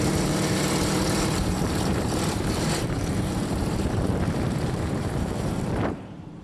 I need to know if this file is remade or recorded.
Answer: remade